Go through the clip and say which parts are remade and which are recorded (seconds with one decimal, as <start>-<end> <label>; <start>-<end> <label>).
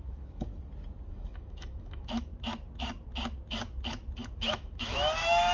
0.0-0.5 remade; 0.5-1.1 recorded; 1.1-2.3 remade; 2.3-4.4 recorded; 4.4-5.5 remade